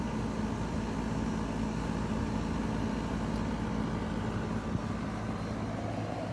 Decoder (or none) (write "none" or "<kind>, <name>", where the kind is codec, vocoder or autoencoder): none